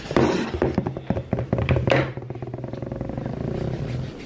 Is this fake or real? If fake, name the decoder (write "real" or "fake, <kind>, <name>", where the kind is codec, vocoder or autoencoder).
real